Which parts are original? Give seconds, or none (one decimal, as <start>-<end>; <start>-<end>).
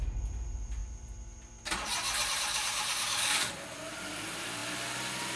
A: 0.0-2.5; 3.5-5.4